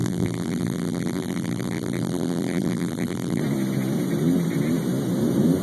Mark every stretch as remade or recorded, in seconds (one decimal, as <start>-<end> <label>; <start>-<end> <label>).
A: 0.0-3.4 remade; 3.4-5.6 recorded